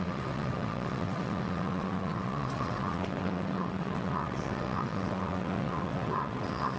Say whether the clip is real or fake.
fake